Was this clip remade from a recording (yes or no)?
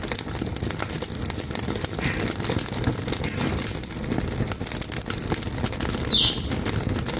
no